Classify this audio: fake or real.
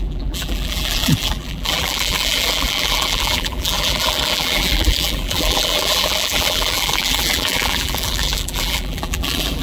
fake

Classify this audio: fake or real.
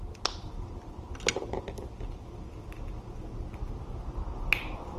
real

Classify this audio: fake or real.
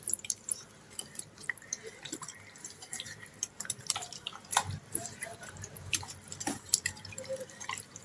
fake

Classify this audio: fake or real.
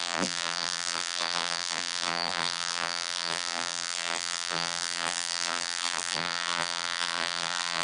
fake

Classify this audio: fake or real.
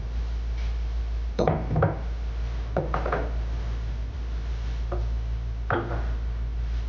real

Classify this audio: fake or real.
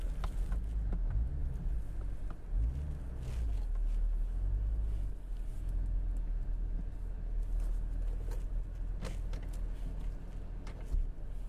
real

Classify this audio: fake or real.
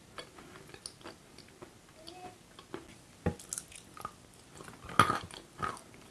real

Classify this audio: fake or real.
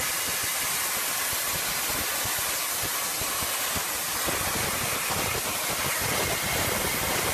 real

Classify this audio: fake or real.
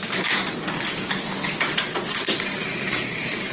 fake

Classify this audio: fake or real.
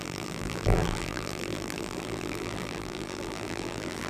fake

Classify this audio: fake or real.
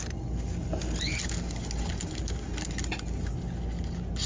real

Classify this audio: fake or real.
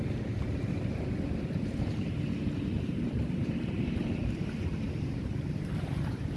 fake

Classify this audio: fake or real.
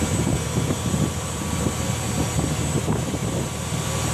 real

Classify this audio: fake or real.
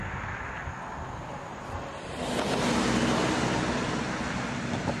real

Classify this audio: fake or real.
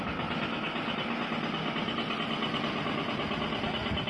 real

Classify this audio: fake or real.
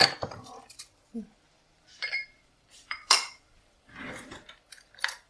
fake